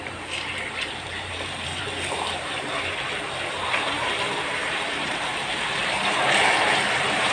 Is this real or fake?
fake